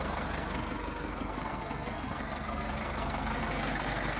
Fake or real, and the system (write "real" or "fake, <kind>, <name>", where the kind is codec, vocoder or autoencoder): fake, codec, SNAC